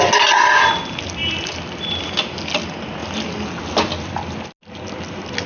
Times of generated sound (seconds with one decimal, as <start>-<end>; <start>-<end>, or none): none